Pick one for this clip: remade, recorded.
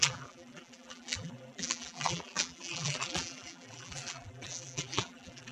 remade